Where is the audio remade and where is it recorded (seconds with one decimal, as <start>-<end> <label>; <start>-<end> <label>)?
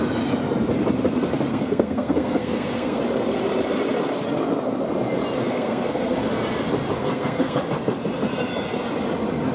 0.0-1.5 recorded; 1.5-3.0 remade; 3.0-5.4 recorded; 5.4-6.2 remade; 6.2-7.0 recorded; 7.0-7.6 remade; 7.6-9.5 recorded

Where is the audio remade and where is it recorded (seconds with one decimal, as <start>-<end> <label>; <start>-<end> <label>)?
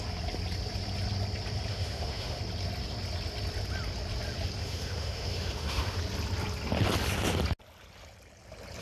0.0-1.7 recorded; 1.7-2.4 remade; 2.4-4.6 recorded; 4.6-6.0 remade; 6.0-8.8 recorded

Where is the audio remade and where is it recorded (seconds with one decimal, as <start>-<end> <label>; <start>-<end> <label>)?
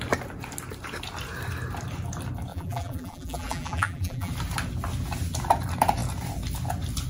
0.0-2.5 recorded; 2.5-4.3 remade; 4.3-7.1 recorded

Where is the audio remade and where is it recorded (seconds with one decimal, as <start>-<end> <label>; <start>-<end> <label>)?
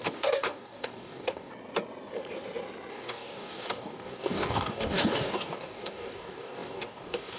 0.0-1.5 remade; 1.5-2.9 recorded; 2.9-7.4 remade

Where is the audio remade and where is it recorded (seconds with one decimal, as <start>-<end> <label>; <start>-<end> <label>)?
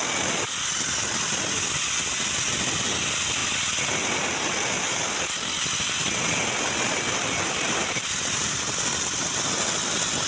0.0-10.3 recorded